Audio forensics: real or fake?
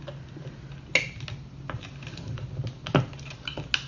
real